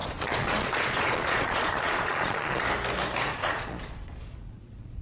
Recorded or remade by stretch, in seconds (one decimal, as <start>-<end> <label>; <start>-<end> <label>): 0.0-2.6 remade; 2.6-3.3 recorded; 3.3-5.0 remade